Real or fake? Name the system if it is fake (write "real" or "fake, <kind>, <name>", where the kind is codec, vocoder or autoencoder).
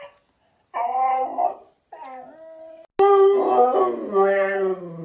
real